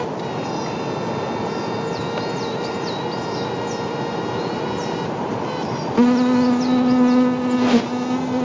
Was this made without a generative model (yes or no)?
yes